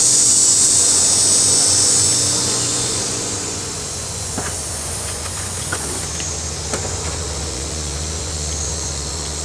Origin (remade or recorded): remade